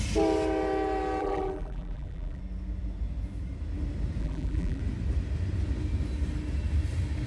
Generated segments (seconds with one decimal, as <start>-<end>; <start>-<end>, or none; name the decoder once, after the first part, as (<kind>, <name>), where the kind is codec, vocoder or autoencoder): 1.2-2.4 (vocoder, BigVGAN v2); 4.2-4.8